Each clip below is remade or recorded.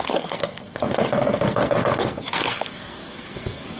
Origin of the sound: remade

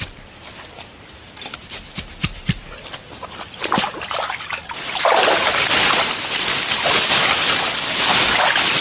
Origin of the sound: recorded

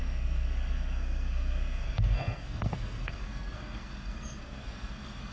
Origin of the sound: remade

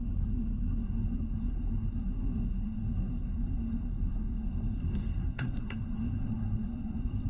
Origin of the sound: remade